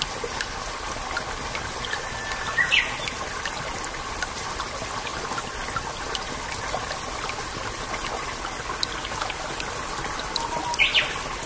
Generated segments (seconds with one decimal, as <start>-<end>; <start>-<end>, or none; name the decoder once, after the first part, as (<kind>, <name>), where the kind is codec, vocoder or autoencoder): none